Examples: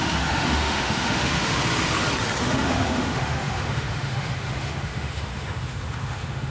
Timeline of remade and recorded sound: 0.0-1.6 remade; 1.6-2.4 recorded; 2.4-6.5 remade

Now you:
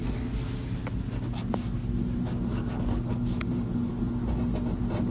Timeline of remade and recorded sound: 0.0-2.5 recorded; 2.5-4.0 remade; 4.0-5.1 recorded

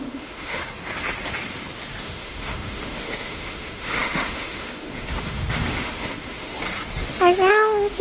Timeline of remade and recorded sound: 0.0-0.6 remade; 0.6-2.0 recorded; 2.0-6.5 remade; 6.5-7.5 recorded; 7.5-8.0 remade

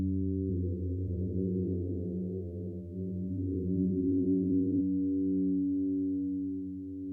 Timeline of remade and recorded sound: 0.0-0.5 recorded; 0.5-4.8 remade; 4.8-7.1 recorded

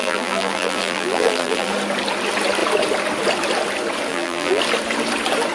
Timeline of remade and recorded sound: 0.0-1.7 remade; 1.7-4.1 recorded; 4.1-4.6 remade; 4.6-5.5 recorded